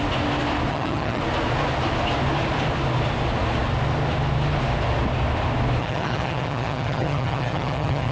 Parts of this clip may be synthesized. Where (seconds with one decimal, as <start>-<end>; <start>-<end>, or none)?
0.7-1.2; 5.8-8.1